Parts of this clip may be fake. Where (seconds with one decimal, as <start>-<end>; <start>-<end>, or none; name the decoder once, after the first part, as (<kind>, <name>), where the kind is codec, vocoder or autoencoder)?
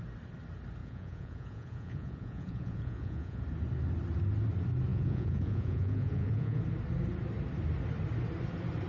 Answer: 0.8-3.4 (vocoder, Vocos); 4.9-6.6